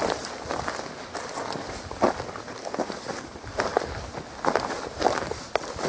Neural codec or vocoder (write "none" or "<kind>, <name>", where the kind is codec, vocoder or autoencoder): none